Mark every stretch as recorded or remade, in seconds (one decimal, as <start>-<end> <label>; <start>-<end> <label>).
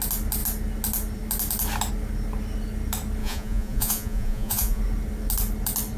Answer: 0.0-3.2 recorded; 3.2-4.8 remade; 4.8-6.0 recorded